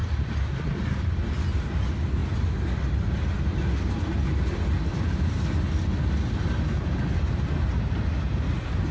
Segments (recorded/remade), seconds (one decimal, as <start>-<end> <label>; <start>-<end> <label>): 0.0-8.9 recorded